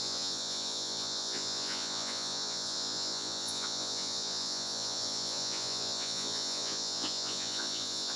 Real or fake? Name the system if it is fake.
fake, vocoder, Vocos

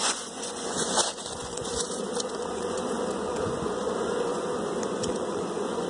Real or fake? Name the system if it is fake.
fake, vocoder, Vocos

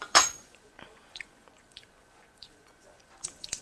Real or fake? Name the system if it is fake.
fake, vocoder, Vocos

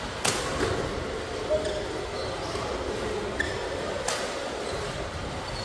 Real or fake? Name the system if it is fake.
real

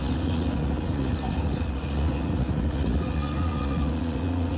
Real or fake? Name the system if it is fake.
fake, vocoder, Vocos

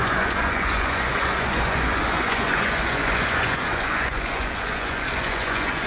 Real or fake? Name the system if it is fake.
fake, vocoder, Vocos